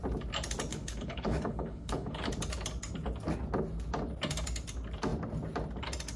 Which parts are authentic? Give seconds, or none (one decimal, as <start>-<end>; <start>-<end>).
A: 0.0-0.7; 2.3-6.2